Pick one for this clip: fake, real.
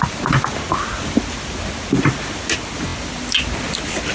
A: real